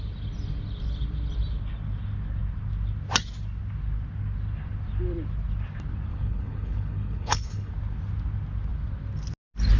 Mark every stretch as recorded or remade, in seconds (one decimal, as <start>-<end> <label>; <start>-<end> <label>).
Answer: 0.0-6.1 recorded; 6.1-7.7 remade; 7.7-9.8 recorded